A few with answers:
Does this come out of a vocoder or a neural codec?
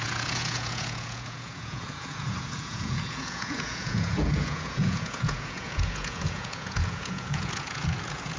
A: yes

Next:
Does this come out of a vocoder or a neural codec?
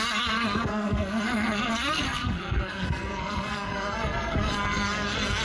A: yes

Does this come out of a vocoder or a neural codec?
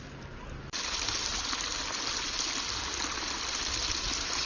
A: no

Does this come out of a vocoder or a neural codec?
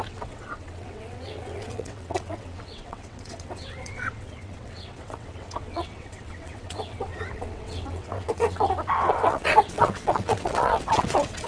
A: yes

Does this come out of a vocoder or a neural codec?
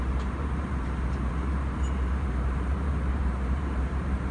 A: yes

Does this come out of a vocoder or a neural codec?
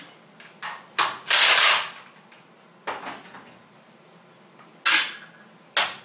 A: no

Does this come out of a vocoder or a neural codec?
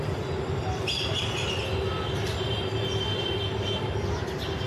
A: no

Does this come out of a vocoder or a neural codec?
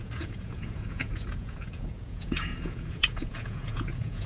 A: yes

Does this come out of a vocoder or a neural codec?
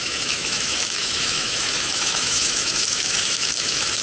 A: yes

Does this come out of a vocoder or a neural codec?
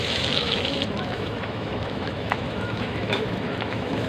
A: yes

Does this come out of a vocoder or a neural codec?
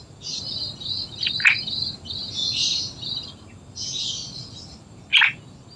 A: no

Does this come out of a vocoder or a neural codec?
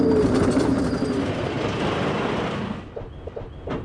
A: no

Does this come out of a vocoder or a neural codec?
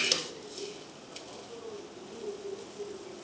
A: no